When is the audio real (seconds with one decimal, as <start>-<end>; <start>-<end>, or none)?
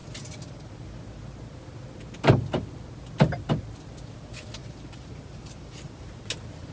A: 0.0-4.6; 6.1-6.7